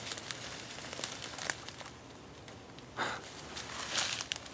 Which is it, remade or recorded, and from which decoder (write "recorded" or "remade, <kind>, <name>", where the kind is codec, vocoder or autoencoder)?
recorded